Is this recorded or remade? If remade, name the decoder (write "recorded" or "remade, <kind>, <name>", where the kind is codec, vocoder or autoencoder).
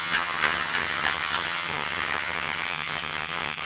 remade, vocoder, HiFi-GAN